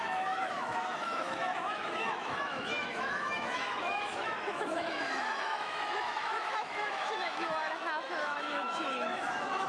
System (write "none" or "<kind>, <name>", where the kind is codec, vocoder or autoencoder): autoencoder, DAC-VAE